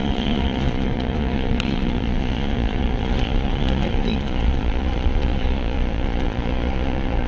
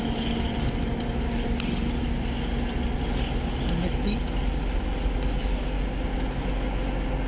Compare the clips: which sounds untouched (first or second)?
second